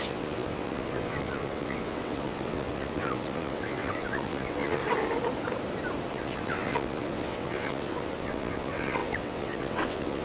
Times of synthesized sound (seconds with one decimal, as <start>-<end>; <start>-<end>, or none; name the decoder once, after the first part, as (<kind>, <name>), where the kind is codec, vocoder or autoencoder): 0.0-4.8 (vocoder, WaveNeXt); 6.1-10.2